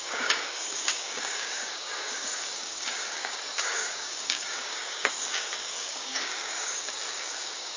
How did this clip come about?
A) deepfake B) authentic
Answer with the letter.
A